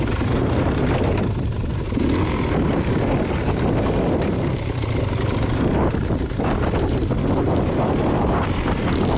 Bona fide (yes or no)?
yes